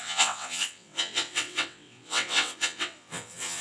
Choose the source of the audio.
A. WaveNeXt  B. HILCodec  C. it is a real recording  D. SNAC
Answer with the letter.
A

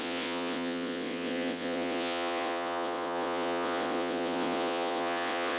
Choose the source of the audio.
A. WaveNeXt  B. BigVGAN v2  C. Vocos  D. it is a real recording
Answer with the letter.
A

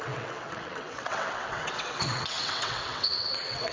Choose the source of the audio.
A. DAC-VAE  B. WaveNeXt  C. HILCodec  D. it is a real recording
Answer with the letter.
B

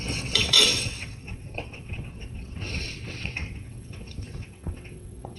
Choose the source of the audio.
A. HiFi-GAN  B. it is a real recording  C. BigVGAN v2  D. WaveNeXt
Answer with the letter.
D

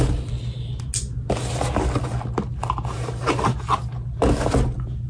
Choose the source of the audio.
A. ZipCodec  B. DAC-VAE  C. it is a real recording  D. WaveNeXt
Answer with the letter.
C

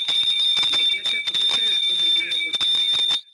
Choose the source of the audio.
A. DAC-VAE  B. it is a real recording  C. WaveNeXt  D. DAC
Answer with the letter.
B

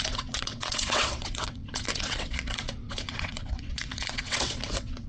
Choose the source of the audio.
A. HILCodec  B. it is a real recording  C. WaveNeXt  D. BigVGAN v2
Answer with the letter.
C